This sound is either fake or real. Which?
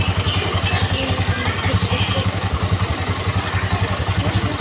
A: real